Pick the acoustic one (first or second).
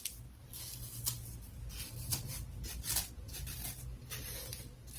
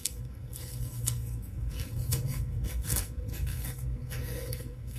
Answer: first